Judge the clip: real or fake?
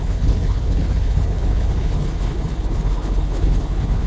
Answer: fake